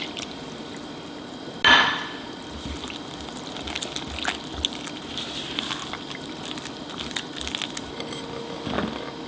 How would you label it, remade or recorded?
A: recorded